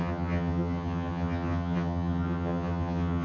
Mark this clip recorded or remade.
remade